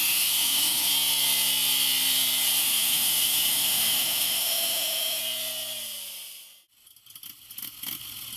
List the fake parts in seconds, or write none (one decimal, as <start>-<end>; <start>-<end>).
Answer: 0.0-0.9; 2.6-5.2